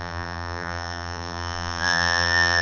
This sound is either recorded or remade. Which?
remade